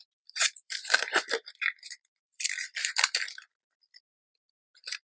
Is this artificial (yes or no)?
yes